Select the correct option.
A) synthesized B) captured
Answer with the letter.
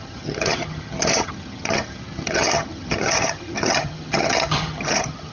A